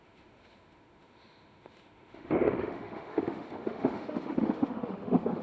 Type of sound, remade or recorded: remade